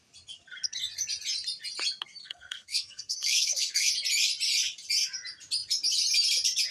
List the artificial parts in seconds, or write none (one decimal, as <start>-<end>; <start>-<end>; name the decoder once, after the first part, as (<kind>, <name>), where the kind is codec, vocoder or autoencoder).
2.2-3.9 (codec, SNAC)